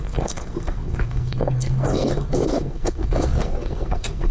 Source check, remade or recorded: remade